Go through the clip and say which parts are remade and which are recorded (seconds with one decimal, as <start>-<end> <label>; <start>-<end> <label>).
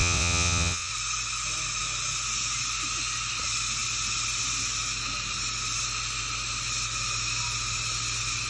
0.0-0.9 remade; 0.9-8.5 recorded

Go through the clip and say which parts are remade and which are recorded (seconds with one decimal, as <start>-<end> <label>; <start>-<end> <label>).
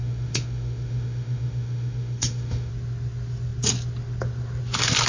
0.0-2.7 remade; 2.7-5.1 recorded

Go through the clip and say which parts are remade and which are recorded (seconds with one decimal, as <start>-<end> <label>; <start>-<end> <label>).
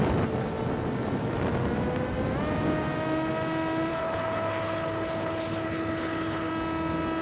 0.0-3.9 recorded; 3.9-6.5 remade; 6.5-7.2 recorded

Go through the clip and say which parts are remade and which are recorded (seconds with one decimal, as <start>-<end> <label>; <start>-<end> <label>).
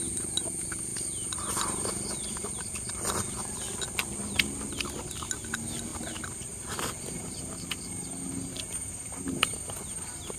0.0-0.9 recorded; 0.9-1.9 remade; 1.9-2.4 recorded; 2.4-2.9 remade; 2.9-7.4 recorded; 7.4-8.3 remade; 8.3-10.4 recorded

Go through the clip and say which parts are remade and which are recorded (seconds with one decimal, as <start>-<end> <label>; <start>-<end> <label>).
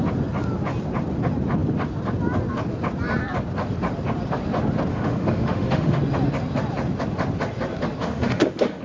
0.0-4.9 recorded; 4.9-6.0 remade; 6.0-8.0 recorded; 8.0-8.8 remade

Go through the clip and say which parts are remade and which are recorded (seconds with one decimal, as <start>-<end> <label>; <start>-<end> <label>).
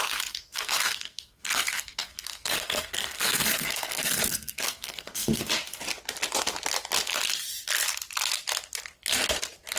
0.0-5.5 remade; 5.5-9.8 recorded